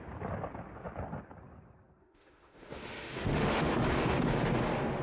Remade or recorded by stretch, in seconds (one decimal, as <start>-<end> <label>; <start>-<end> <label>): 0.0-2.0 recorded; 2.0-3.7 remade; 3.7-5.0 recorded